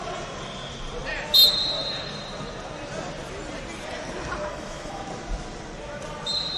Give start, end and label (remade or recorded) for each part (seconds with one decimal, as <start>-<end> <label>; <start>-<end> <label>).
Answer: 0.0-4.5 recorded; 4.5-5.0 remade; 5.0-6.6 recorded